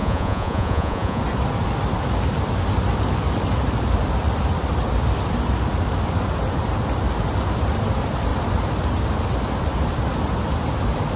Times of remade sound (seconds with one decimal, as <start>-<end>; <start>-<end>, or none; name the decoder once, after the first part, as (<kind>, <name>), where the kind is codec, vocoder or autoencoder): 0.0-1.2 (vocoder, Vocos)